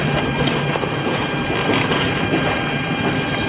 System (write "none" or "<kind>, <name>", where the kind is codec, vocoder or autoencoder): none